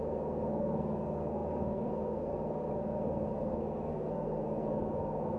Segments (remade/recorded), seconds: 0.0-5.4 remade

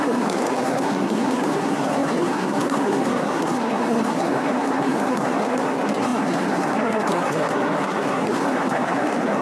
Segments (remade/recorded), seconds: 0.0-9.4 remade